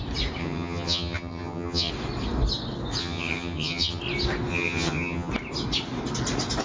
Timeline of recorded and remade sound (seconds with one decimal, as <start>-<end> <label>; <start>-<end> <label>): 0.0-0.4 recorded; 0.4-1.9 remade; 1.9-3.0 recorded; 3.0-4.0 remade; 4.0-4.5 recorded; 4.5-5.3 remade; 5.3-6.6 recorded